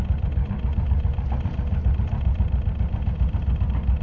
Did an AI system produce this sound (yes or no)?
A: no